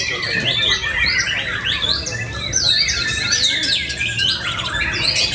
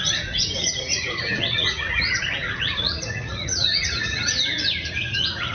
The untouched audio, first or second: first